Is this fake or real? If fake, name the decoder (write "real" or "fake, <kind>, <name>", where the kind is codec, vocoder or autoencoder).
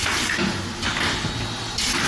real